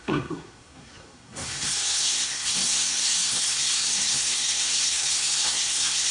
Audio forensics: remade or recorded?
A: remade